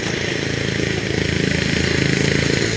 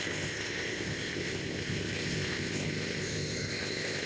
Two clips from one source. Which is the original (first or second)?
first